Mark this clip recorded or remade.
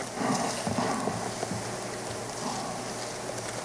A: recorded